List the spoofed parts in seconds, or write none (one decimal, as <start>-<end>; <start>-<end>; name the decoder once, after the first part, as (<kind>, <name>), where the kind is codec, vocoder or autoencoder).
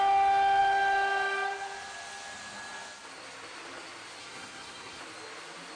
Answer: 4.2-5.0 (codec, SNAC)